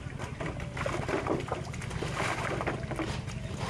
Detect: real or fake real